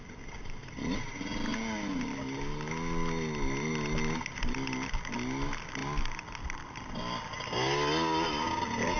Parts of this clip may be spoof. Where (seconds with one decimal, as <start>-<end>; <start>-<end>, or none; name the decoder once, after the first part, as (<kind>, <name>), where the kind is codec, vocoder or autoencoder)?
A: none